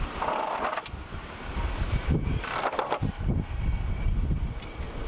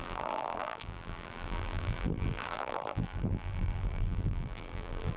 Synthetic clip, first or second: second